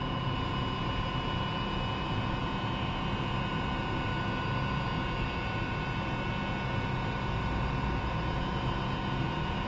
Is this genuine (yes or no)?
yes